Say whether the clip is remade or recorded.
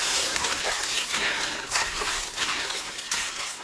remade